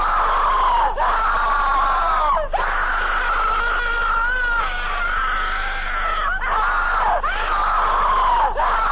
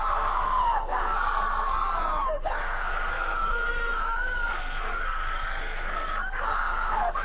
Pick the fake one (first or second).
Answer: second